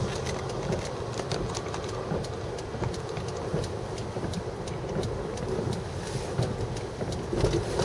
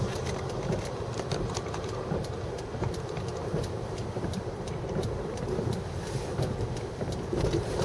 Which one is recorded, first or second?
first